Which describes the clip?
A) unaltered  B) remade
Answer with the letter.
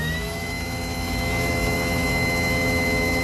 B